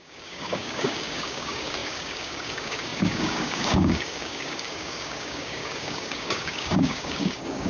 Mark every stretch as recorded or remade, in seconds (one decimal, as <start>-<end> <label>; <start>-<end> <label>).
0.0-7.7 remade